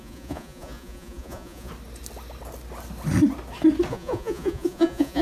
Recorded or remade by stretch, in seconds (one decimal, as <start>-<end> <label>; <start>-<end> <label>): 0.0-1.7 remade; 1.7-3.9 recorded; 3.9-5.2 remade

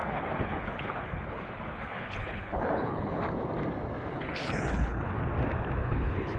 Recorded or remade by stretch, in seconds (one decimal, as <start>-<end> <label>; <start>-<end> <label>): 0.0-3.2 remade; 3.2-4.1 recorded; 4.1-5.2 remade; 5.2-5.8 recorded; 5.8-6.4 remade

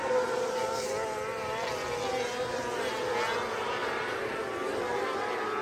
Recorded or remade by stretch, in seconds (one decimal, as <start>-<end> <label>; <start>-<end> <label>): 0.0-0.9 remade; 0.9-3.8 recorded; 3.8-4.4 remade; 4.4-5.6 recorded

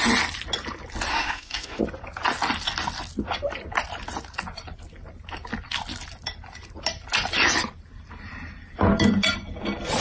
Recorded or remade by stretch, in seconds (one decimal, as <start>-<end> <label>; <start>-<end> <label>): 0.0-1.1 recorded; 1.1-1.8 remade; 1.8-10.0 recorded

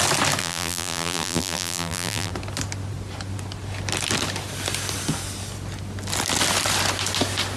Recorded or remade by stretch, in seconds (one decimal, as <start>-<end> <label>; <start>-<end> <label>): 0.0-0.4 recorded; 0.4-2.3 remade; 2.3-7.6 recorded

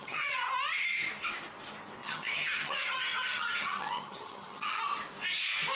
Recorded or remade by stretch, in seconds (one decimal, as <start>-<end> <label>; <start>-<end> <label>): 0.0-0.5 remade; 0.5-2.0 recorded; 2.0-4.8 remade; 4.8-5.7 recorded

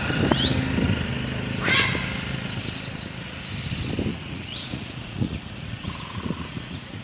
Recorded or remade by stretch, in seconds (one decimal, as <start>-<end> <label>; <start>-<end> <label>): 0.0-4.1 recorded; 4.1-7.0 remade